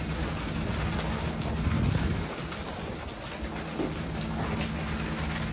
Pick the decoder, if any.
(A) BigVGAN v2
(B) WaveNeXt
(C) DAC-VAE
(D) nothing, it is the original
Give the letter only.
D